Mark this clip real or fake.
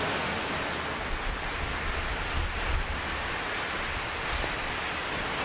real